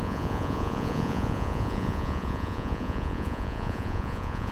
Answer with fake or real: fake